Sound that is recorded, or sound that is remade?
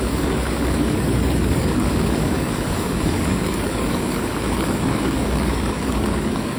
remade